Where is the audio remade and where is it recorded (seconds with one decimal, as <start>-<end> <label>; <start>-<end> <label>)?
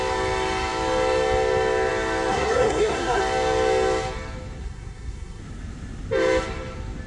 0.0-2.3 recorded; 2.3-3.2 remade; 3.2-4.6 recorded; 4.6-5.4 remade; 5.4-7.1 recorded